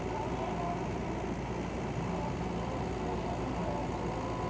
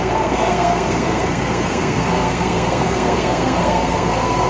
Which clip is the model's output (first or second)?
second